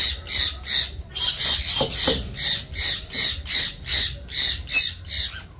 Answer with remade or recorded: recorded